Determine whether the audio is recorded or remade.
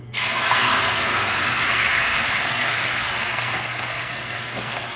remade